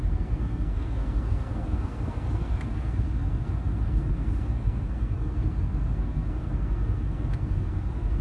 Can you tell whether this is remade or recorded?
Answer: remade